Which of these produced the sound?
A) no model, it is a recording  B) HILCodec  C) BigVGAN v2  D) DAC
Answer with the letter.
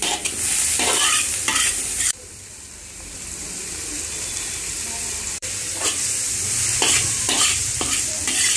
C